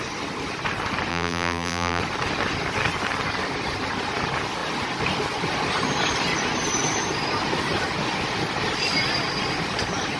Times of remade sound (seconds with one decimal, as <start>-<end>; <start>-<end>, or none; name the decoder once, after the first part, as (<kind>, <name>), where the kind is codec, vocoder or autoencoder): 1.1-2.0 (vocoder, BigVGAN v2)